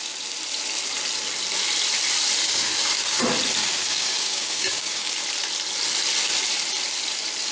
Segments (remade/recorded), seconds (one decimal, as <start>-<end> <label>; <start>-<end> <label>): 0.0-2.4 recorded; 2.4-3.2 remade; 3.2-3.6 recorded; 3.6-5.1 remade; 5.1-7.5 recorded